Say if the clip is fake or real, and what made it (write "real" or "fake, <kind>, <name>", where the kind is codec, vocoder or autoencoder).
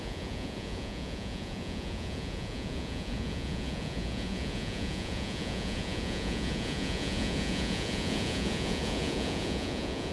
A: fake, vocoder, Vocos